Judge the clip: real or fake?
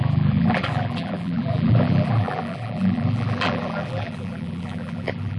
fake